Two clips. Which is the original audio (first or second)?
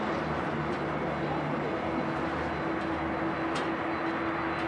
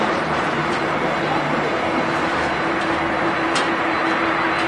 first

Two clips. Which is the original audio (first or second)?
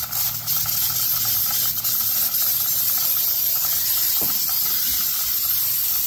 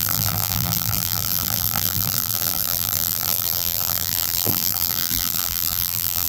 first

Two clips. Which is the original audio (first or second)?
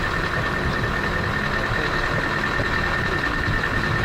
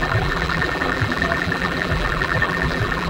first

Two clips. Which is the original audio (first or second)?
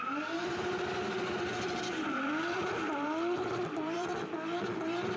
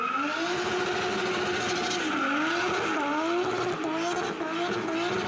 second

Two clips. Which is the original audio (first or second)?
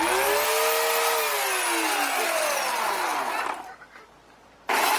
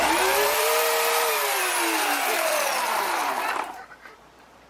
first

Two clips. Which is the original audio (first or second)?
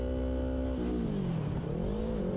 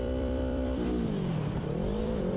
first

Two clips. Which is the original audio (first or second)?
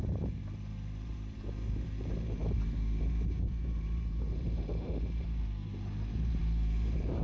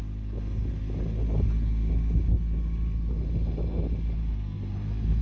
second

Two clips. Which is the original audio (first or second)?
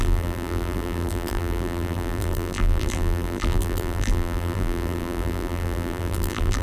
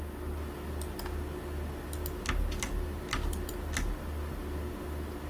second